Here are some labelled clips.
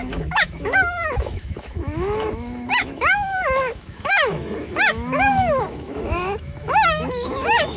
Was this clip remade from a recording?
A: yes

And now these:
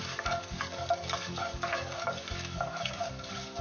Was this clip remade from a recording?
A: yes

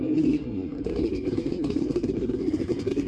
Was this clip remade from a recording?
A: yes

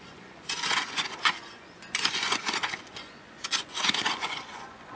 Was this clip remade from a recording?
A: yes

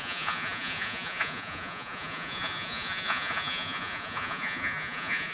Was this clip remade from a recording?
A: yes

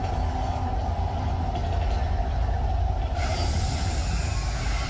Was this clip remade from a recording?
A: no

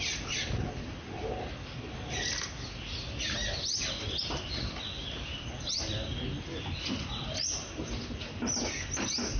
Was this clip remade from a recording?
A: no